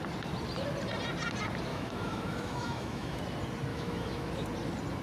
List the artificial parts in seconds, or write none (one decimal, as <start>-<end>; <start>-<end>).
1.7-3.2; 3.7-4.3